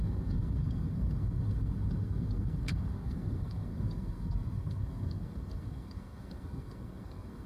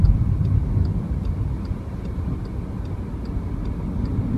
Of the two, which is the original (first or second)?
second